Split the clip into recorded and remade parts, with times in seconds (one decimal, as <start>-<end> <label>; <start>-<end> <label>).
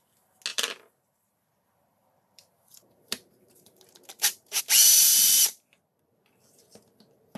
0.0-0.5 recorded; 0.5-4.6 remade; 4.6-5.1 recorded; 5.1-6.0 remade; 6.0-7.4 recorded